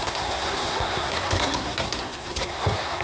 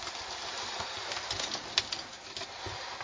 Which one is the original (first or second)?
second